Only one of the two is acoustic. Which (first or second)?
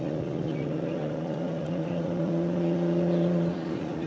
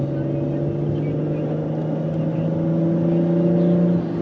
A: second